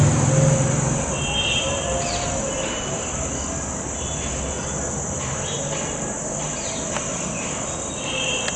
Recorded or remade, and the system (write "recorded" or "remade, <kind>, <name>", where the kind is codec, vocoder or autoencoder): recorded